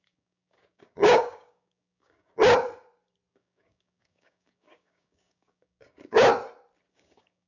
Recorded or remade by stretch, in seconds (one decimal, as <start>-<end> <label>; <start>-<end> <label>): 0.0-2.4 remade; 2.4-3.3 recorded; 3.3-6.3 remade; 6.3-6.9 recorded; 6.9-7.5 remade